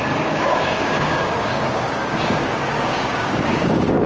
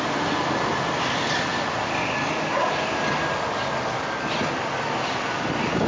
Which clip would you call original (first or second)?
second